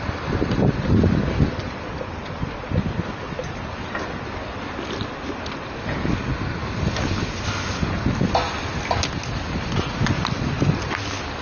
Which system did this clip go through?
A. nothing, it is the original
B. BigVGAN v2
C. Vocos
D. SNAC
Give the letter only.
A